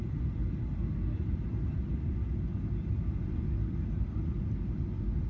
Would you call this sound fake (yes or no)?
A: no